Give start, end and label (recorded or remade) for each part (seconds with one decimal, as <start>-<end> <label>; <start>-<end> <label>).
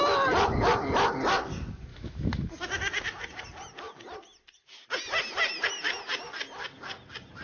0.0-1.9 recorded; 1.9-2.5 remade; 2.5-7.4 recorded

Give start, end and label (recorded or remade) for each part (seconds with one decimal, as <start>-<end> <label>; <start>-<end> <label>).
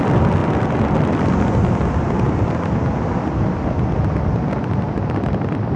0.0-5.8 recorded